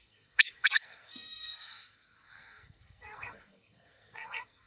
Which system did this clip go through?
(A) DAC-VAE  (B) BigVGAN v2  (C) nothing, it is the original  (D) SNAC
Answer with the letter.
D